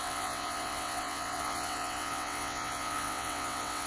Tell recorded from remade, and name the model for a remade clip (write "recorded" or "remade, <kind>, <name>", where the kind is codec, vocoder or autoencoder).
remade, vocoder, WaveNeXt